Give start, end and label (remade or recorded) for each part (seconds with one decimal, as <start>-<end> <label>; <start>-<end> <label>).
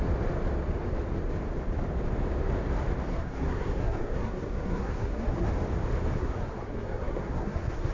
0.0-3.1 recorded; 3.1-5.5 remade; 5.5-6.2 recorded; 6.2-7.9 remade